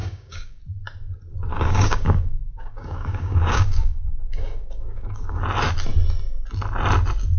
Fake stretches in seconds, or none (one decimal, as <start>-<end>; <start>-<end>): 0.0-0.6; 1.5-5.4